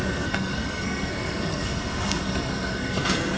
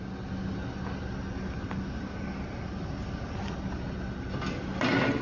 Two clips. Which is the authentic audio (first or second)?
second